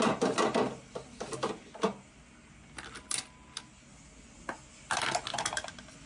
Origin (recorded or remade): recorded